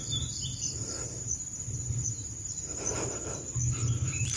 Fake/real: fake